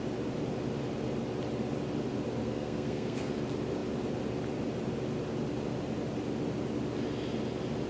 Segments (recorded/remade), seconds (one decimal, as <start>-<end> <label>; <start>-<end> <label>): 0.0-2.4 recorded; 2.4-3.3 remade; 3.3-7.9 recorded